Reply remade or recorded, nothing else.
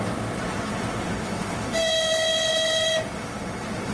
recorded